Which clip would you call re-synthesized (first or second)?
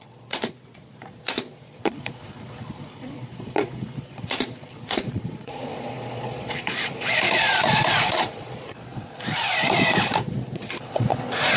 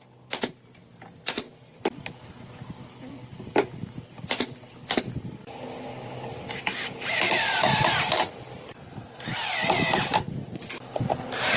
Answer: first